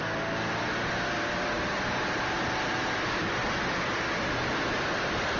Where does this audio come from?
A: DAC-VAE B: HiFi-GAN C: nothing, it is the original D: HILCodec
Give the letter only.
C